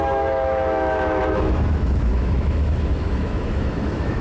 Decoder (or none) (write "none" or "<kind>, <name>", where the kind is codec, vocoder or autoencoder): autoencoder, DAC-VAE